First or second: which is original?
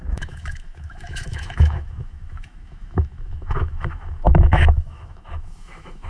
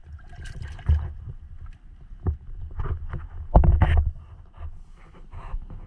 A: second